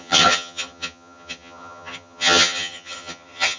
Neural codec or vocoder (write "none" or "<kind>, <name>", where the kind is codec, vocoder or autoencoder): vocoder, HiFi-GAN